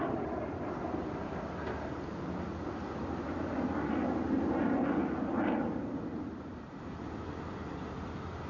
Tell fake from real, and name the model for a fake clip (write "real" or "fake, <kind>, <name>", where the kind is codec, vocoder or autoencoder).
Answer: real